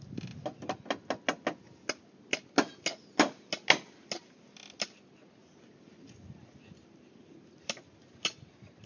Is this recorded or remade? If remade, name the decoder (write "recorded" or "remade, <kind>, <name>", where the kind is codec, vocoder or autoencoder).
recorded